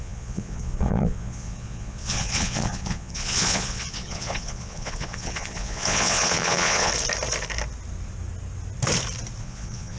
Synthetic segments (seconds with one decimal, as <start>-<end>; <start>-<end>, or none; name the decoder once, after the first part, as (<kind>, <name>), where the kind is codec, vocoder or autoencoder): 0.0-6.9 (vocoder, Vocos); 9.4-10.0